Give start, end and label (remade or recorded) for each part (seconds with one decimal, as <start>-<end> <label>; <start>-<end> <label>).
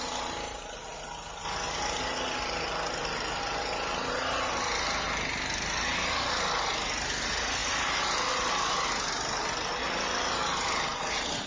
0.0-11.5 recorded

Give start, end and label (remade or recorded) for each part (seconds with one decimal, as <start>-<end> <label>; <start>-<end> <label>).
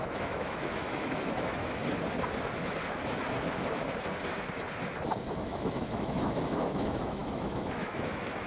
0.0-1.8 remade; 1.8-5.3 recorded; 5.3-8.5 remade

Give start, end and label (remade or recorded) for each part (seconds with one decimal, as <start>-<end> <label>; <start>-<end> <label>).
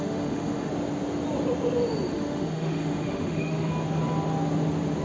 0.0-0.7 remade; 0.7-2.1 recorded; 2.1-3.7 remade; 3.7-5.0 recorded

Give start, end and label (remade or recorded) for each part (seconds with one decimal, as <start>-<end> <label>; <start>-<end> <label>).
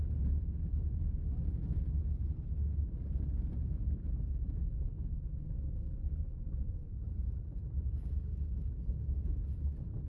0.0-0.7 recorded; 0.7-1.2 remade; 1.2-3.8 recorded; 3.8-8.1 remade; 8.1-10.1 recorded